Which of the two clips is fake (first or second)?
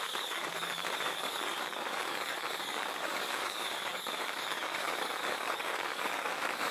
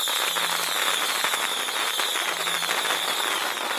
first